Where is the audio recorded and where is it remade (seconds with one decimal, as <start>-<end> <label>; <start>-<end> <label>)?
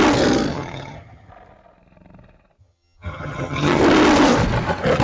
0.0-0.5 recorded; 0.5-1.3 remade; 1.3-2.6 recorded; 2.6-3.8 remade; 3.8-5.0 recorded